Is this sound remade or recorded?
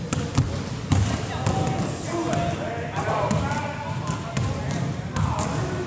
recorded